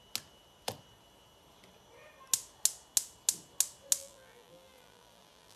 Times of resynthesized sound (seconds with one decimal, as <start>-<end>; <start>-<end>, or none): 4.0-5.6